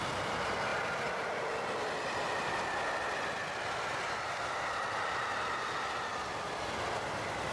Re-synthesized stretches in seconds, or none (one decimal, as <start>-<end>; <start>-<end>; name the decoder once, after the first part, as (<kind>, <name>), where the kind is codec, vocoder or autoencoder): none